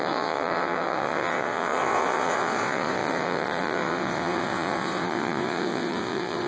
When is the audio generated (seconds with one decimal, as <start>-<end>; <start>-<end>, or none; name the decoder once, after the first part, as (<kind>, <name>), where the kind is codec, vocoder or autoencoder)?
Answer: 0.0-6.5 (vocoder, WaveNeXt)